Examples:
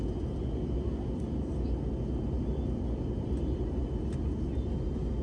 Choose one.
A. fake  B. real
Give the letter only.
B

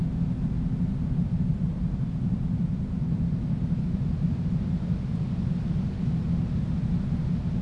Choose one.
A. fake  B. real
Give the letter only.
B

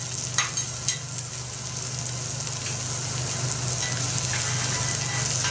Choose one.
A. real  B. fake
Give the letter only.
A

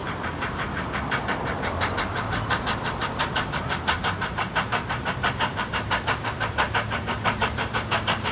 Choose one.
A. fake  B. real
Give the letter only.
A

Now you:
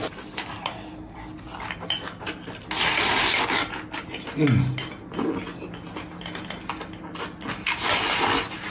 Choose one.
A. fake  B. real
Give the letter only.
B